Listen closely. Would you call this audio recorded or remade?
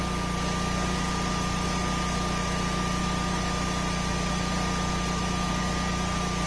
recorded